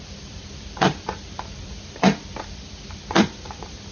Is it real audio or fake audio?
fake